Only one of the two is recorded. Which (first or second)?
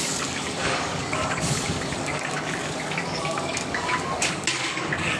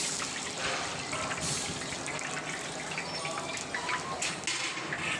second